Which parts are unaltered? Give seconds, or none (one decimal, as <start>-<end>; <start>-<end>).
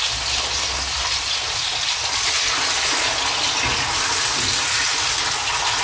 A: 0.0-5.8